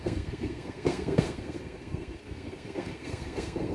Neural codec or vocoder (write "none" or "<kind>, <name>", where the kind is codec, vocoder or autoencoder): codec, SNAC